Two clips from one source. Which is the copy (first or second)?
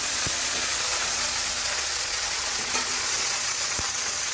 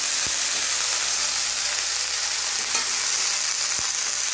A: first